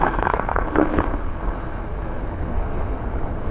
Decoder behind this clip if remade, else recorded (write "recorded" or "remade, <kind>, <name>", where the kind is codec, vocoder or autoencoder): remade, codec, SNAC